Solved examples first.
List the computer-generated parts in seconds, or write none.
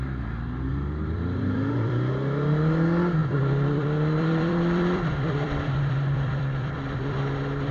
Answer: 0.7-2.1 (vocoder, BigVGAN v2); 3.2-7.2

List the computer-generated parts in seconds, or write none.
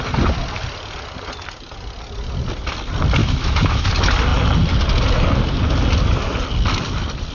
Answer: 3.2-3.9 (autoencoder, DAC-VAE)